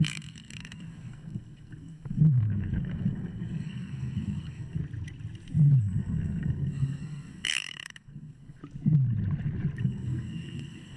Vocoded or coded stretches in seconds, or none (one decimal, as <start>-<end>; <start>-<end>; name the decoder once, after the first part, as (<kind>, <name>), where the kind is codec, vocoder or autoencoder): 0.0-4.8 (codec, SNAC); 5.8-8.6; 9.8-11.0